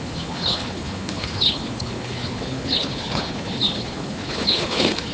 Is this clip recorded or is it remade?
remade